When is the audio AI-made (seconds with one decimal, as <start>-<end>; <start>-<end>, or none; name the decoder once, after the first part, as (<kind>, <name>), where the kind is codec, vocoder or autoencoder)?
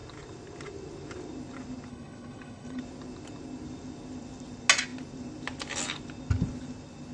1.9-2.8 (codec, HILCodec)